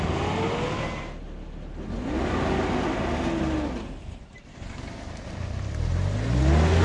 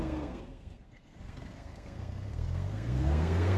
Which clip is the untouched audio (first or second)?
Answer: first